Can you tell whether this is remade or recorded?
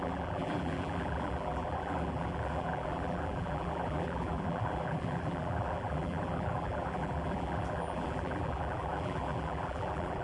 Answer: remade